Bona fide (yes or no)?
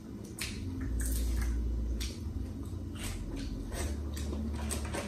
yes